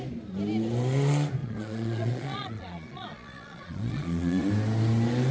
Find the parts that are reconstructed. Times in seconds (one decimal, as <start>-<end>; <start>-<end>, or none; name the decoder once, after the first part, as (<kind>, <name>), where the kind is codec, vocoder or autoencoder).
1.4-4.5 (vocoder, Vocos)